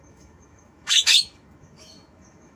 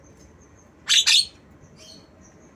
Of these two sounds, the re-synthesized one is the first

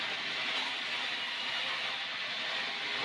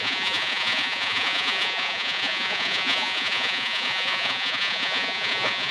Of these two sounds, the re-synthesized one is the second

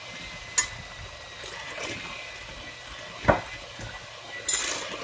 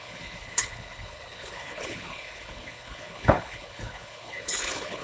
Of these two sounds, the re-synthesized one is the second